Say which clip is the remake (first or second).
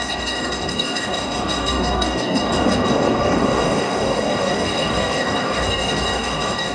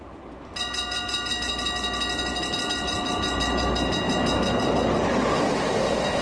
first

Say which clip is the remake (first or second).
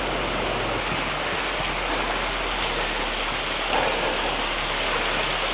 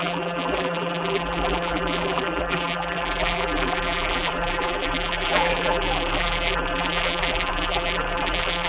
second